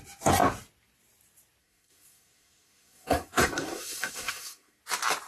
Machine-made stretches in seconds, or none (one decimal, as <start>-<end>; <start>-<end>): 1.6-4.8